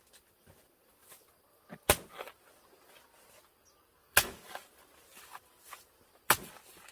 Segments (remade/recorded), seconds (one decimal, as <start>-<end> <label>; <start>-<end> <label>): 0.0-4.0 recorded; 4.0-4.6 remade; 4.6-6.9 recorded